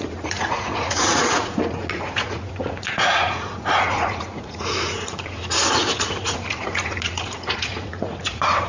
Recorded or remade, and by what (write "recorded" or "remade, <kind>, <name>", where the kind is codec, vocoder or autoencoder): remade, vocoder, Vocos